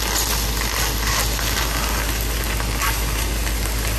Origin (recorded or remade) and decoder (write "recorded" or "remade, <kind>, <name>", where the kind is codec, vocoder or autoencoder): recorded